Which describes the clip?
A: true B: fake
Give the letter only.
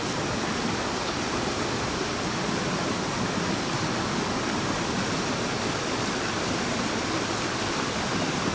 A